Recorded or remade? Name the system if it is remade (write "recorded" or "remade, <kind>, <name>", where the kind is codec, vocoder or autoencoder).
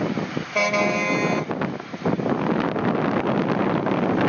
recorded